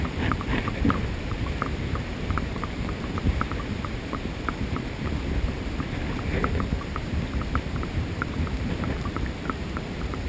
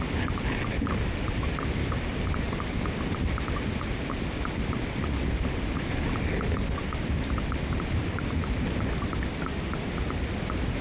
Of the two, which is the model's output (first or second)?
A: first